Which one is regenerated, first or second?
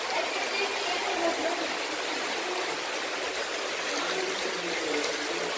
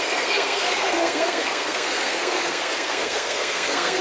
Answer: second